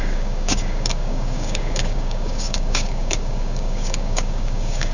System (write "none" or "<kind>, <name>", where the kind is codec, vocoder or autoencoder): codec, DAC